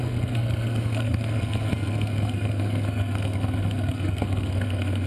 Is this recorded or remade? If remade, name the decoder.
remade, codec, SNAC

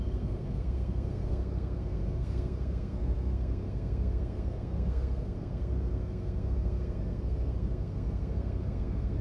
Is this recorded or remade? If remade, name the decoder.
remade, codec, SNAC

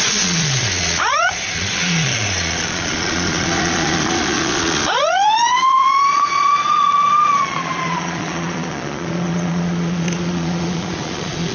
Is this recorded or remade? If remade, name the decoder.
remade, vocoder, Vocos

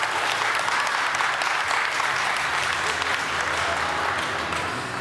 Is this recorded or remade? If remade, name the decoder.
recorded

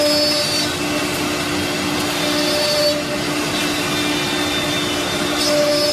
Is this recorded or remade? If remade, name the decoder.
recorded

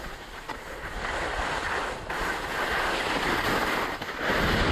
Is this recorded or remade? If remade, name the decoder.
recorded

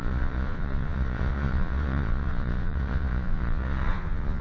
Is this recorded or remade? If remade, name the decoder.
remade, vocoder, Vocos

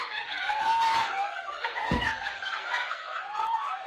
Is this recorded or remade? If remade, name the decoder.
remade, codec, SNAC